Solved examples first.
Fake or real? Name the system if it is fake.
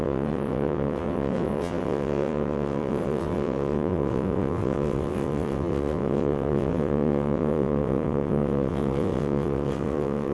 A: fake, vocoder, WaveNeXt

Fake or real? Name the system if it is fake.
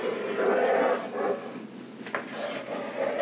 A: real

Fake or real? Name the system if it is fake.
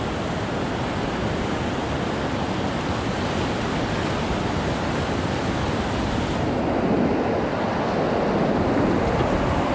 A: real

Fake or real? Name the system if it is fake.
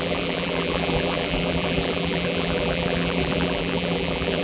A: fake, vocoder, BigVGAN v2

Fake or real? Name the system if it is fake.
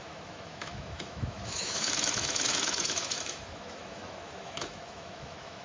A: fake, autoencoder, DAC-VAE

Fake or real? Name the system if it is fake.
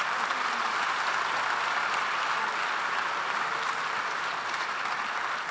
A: real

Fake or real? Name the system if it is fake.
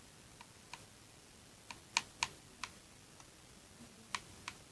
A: real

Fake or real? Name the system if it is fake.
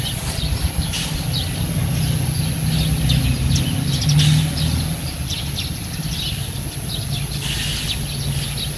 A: real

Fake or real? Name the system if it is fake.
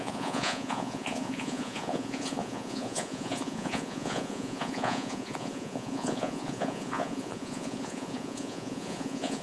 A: fake, vocoder, Vocos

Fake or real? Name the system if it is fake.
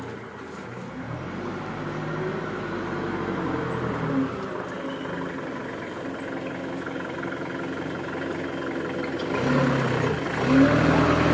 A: real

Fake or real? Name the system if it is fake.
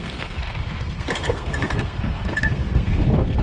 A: fake, codec, SNAC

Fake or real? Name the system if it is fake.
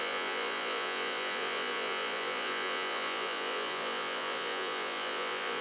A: fake, vocoder, Vocos